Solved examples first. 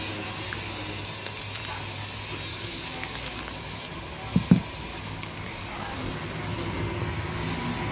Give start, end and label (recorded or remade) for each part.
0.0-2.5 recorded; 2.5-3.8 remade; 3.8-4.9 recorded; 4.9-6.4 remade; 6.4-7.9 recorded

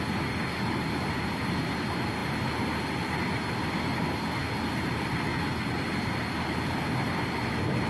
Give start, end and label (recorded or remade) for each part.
0.0-7.9 recorded

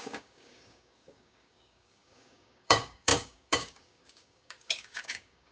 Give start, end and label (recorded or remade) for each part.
0.0-5.5 remade

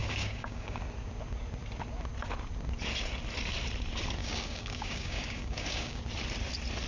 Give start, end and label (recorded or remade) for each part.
0.0-0.8 remade; 0.8-4.2 recorded; 4.2-6.0 remade; 6.0-6.9 recorded